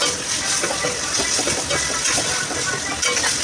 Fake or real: real